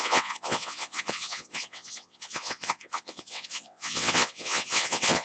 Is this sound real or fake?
fake